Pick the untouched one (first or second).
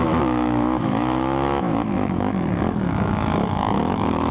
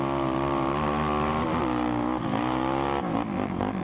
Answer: second